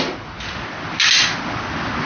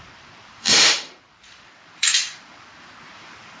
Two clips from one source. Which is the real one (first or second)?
first